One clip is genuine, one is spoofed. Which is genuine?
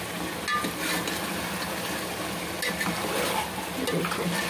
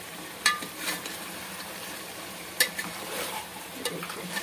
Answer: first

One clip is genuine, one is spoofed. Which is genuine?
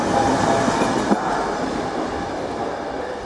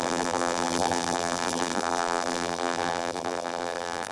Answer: first